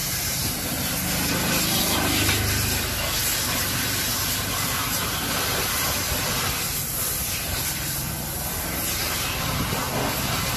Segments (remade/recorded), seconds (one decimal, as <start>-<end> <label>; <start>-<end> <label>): 0.0-0.9 remade; 0.9-9.0 recorded; 9.0-9.8 remade; 9.8-10.6 recorded